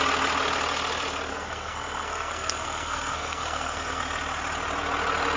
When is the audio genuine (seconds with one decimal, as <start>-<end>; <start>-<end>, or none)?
0.0-1.3; 4.0-5.4